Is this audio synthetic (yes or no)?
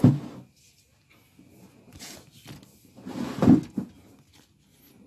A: no